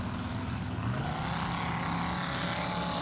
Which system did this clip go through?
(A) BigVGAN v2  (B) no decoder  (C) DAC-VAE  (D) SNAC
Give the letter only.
B